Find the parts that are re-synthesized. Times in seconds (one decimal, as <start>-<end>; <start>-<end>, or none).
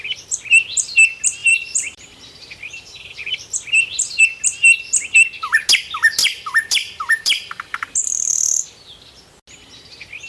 1.4-4.2; 6.2-8.3